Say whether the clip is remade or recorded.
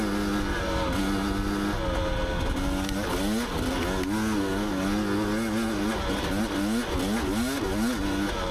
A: recorded